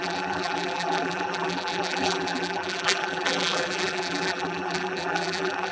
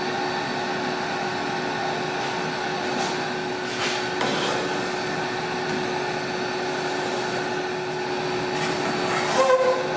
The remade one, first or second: first